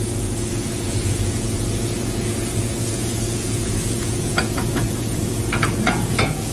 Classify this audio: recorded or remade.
remade